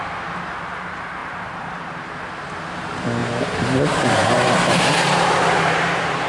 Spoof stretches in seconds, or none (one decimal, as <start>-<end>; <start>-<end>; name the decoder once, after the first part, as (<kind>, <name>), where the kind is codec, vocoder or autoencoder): 1.2-2.1 (vocoder, BigVGAN v2); 3.2-6.3